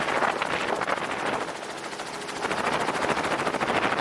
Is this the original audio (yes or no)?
yes